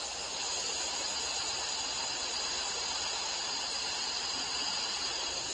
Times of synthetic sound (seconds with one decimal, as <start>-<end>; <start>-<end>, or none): 1.4-4.7